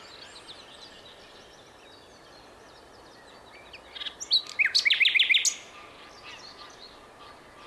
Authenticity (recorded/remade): recorded